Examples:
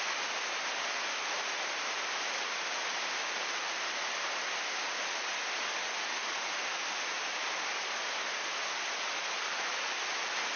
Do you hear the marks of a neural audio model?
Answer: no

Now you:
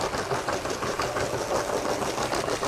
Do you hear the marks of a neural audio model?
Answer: no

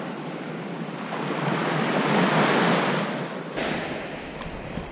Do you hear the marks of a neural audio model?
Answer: no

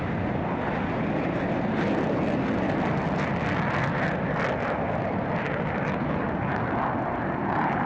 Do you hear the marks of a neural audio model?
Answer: no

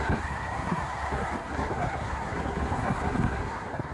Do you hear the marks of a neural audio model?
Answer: yes